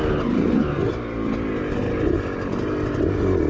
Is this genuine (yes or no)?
yes